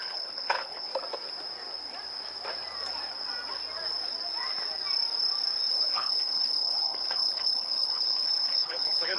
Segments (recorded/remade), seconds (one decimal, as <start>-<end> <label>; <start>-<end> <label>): 0.0-0.9 remade; 0.9-5.7 recorded; 5.7-9.2 remade